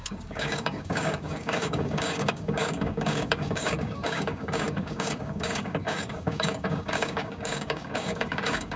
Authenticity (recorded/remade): remade